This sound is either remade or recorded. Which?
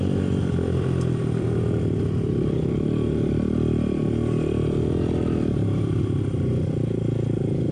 recorded